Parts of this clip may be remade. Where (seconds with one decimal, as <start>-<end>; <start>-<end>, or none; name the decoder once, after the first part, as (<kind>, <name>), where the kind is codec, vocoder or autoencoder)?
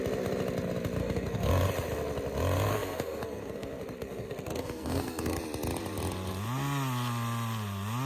1.0-1.5 (codec, SNAC); 2.7-5.4